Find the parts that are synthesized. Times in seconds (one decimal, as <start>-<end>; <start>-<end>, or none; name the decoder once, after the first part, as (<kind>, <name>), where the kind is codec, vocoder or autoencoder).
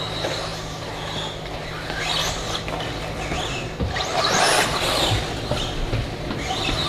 none